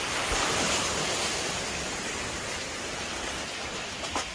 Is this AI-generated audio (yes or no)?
no